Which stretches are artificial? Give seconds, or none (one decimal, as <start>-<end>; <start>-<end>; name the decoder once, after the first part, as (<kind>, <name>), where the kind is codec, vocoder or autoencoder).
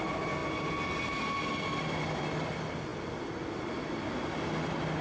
none